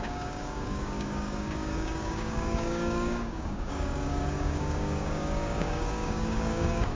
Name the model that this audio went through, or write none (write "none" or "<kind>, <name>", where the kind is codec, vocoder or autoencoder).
codec, DAC